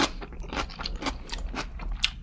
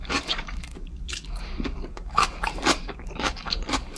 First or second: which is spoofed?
second